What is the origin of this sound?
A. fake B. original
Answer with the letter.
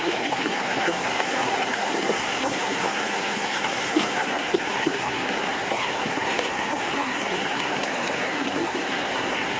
A